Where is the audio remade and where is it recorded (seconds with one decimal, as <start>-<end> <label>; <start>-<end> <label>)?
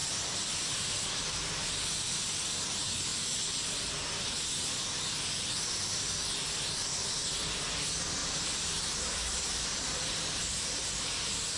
0.0-0.8 remade; 0.8-8.2 recorded; 8.2-10.4 remade; 10.4-11.6 recorded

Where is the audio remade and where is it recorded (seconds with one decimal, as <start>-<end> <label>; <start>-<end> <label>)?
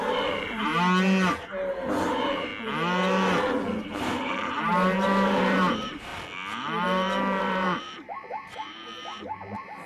0.0-0.7 remade; 0.7-1.7 recorded; 1.7-2.5 remade; 2.5-3.8 recorded; 3.8-6.1 remade; 6.1-7.4 recorded; 7.4-9.9 remade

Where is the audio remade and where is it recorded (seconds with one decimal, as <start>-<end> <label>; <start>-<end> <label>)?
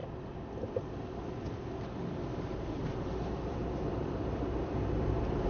0.0-5.5 remade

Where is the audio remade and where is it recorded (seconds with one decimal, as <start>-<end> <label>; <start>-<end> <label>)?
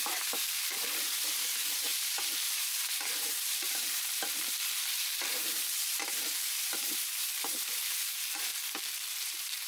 0.0-8.5 remade; 8.5-9.2 recorded; 9.2-9.7 remade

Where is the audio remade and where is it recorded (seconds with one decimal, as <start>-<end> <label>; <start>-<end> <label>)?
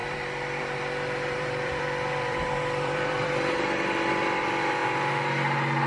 0.0-4.8 remade; 4.8-5.9 recorded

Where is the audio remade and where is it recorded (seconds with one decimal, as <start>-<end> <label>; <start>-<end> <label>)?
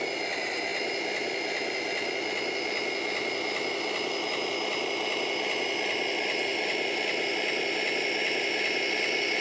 0.0-6.5 recorded; 6.5-8.8 remade; 8.8-9.4 recorded